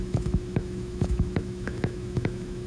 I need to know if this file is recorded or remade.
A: remade